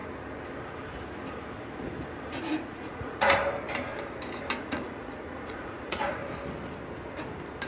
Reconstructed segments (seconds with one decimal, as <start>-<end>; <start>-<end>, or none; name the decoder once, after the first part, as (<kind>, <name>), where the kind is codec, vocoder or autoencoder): 2.3-3.4 (vocoder, Vocos); 4.6-6.2